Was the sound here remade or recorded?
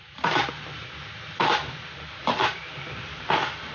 remade